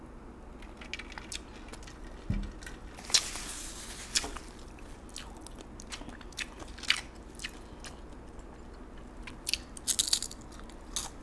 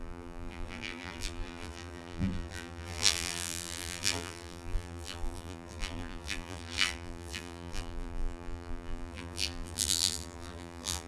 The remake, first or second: second